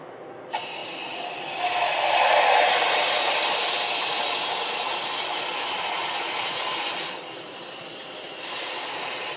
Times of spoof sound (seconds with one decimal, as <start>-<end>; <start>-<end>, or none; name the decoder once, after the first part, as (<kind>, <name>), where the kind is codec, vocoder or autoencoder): none